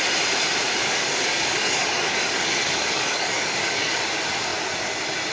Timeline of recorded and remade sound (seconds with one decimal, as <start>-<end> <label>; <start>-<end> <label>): 0.0-0.8 recorded; 0.8-4.0 remade; 4.0-5.3 recorded